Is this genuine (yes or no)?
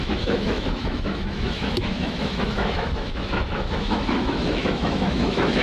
no